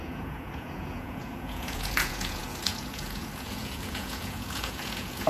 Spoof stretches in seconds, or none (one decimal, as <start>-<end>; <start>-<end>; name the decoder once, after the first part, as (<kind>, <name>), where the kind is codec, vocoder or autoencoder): 0.0-5.3 (vocoder, Vocos)